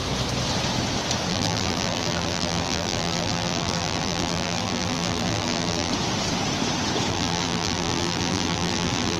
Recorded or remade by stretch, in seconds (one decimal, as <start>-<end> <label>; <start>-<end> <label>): 0.0-1.3 recorded; 1.3-5.9 remade; 5.9-7.1 recorded; 7.1-9.2 remade